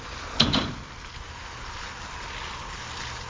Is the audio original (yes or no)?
yes